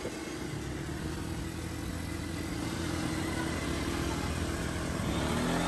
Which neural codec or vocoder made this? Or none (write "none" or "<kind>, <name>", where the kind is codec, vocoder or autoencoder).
none